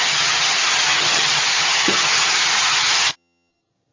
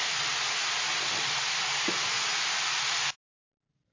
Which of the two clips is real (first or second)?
second